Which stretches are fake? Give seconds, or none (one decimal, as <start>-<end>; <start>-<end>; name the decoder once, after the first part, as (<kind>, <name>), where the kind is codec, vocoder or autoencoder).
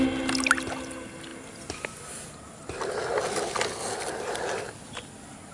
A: none